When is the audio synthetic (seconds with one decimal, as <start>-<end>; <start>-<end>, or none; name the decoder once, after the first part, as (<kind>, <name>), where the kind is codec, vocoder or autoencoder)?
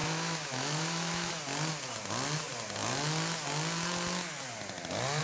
0.0-1.3 (autoencoder, DAC-VAE)